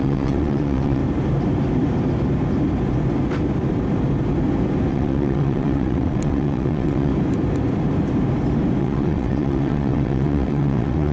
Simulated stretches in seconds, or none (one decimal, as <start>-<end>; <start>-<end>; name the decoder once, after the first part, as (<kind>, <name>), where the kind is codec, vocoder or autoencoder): 0.0-1.0 (vocoder, WaveNeXt); 4.9-7.1; 8.8-11.1